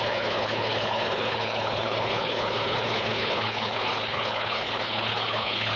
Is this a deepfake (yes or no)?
yes